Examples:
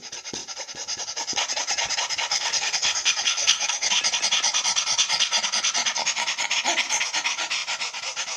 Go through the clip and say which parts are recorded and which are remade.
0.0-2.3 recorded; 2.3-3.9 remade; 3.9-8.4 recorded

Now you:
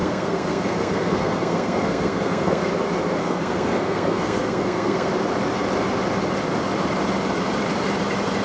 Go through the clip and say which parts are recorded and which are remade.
0.0-2.7 remade; 2.7-3.2 recorded; 3.2-5.1 remade; 5.1-8.4 recorded

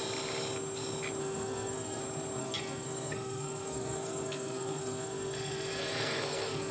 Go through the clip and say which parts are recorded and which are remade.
0.0-1.2 recorded; 1.2-2.0 remade; 2.0-2.4 recorded; 2.4-6.7 remade